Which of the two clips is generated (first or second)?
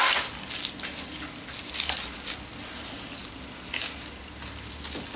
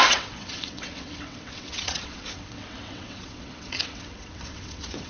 second